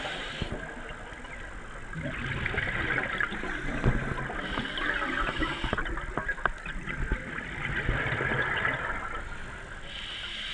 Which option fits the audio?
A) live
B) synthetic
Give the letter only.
A